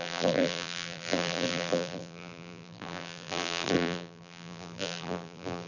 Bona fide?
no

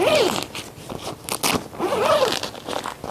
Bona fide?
yes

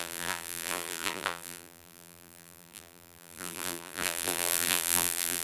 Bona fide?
no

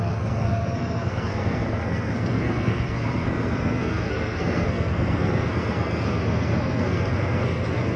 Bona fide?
no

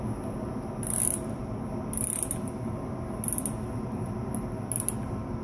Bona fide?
yes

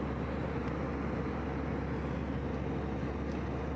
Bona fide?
yes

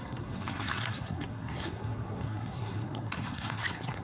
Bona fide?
no